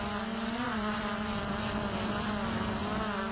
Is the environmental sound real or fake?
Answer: real